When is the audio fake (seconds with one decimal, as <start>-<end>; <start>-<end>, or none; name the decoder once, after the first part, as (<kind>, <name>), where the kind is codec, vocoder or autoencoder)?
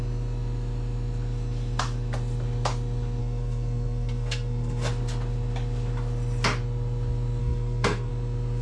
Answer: 3.2-4.9 (codec, SNAC); 7.4-8.1